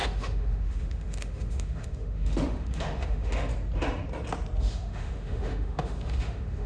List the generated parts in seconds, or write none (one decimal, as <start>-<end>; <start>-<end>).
0.0-3.5; 4.6-6.7